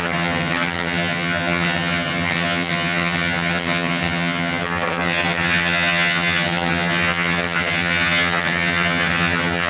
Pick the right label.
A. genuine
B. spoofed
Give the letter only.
B